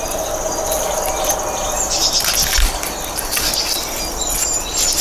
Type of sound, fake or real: real